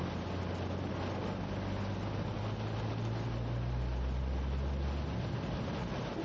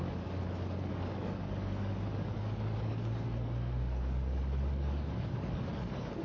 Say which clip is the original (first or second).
first